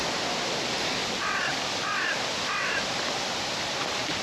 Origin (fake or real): real